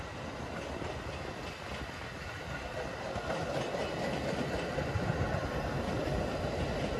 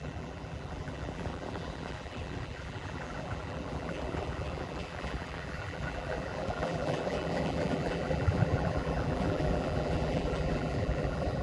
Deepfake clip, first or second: second